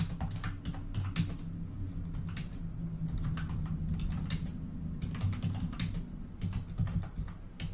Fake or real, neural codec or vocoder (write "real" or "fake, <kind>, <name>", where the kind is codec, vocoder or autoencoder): real